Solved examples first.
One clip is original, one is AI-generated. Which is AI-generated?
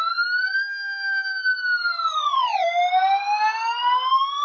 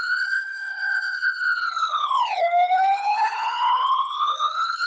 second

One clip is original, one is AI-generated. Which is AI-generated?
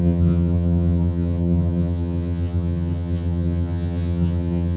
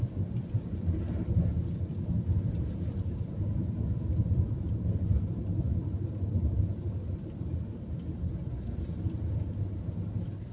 first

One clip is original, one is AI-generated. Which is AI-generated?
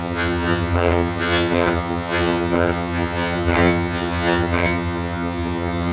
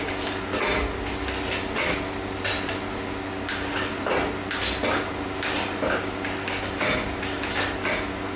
first